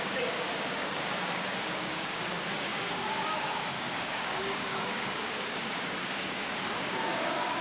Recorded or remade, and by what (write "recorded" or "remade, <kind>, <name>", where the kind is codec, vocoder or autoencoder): remade, codec, DAC